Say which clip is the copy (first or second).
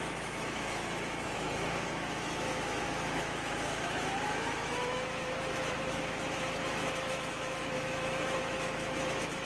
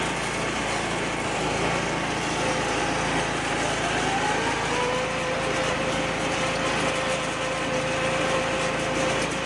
first